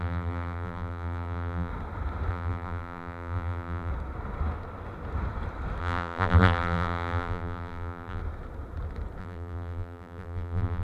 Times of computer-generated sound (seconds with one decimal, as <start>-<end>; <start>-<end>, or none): 0.0-1.7; 2.3-3.9; 5.8-8.2; 9.2-10.8